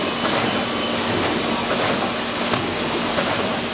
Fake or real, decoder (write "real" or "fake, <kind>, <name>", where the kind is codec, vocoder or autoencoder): real